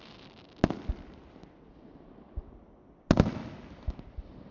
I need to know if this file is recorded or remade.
recorded